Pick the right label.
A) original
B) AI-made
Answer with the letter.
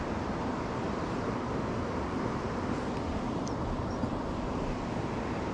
A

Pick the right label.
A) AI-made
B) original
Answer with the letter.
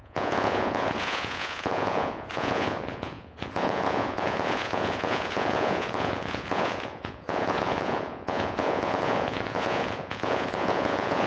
A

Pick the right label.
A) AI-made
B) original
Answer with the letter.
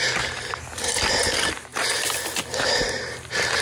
B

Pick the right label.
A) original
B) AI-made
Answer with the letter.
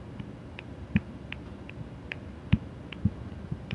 A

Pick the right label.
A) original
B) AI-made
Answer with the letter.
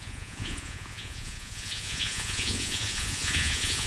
B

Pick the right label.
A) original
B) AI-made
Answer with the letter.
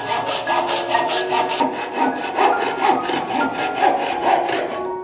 A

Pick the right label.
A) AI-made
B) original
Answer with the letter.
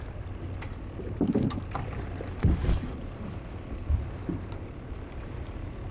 B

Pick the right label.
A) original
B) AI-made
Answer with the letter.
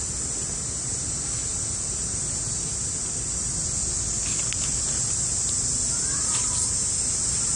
A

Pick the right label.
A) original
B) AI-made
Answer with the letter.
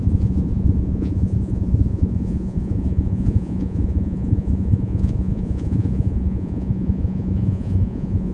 B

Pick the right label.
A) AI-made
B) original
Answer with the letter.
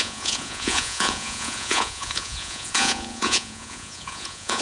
A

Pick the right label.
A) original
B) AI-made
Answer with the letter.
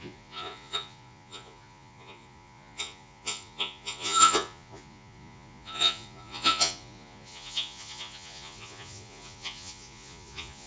B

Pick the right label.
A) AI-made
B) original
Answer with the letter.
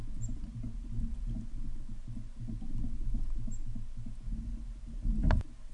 B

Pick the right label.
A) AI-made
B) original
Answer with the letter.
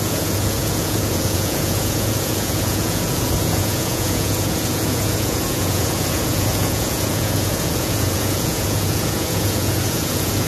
A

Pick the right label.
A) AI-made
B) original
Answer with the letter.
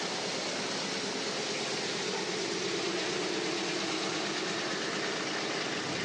B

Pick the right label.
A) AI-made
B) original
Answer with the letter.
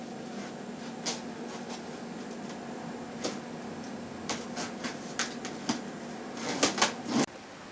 B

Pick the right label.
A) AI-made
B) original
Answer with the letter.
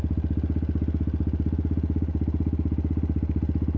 B